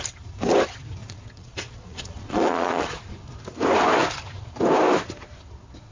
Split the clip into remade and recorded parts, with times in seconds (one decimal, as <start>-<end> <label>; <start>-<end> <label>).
0.0-1.0 recorded; 1.0-3.0 remade; 3.0-5.9 recorded